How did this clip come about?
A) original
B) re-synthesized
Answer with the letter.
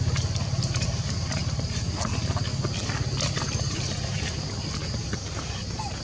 A